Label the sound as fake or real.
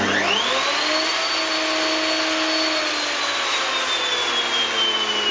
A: real